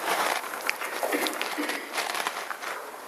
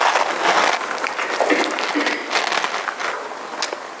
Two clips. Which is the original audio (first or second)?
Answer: second